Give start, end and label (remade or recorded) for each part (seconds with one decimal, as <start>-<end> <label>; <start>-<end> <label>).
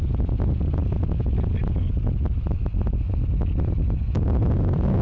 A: 0.0-5.0 recorded